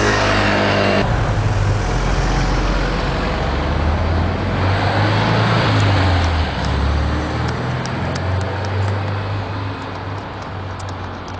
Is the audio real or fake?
real